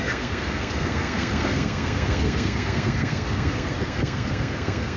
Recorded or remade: remade